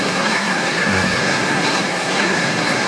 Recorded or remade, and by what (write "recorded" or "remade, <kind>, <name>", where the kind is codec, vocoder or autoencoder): remade, codec, SNAC